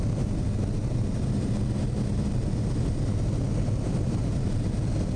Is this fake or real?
real